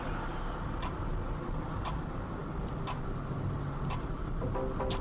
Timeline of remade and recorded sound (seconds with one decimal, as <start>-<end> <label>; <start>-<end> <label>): 0.0-5.0 recorded